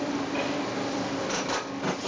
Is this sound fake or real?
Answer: fake